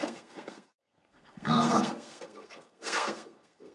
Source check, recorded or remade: remade